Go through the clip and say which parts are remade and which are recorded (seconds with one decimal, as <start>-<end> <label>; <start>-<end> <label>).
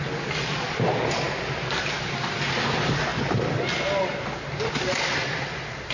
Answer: 0.0-5.9 recorded